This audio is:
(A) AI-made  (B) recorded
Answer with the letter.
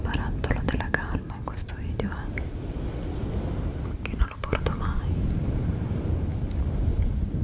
B